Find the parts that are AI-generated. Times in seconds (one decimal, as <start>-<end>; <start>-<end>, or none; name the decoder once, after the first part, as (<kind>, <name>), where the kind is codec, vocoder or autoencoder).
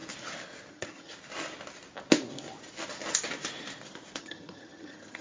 0.7-1.1 (vocoder, HiFi-GAN); 4.2-5.2